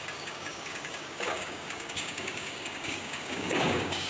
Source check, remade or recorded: remade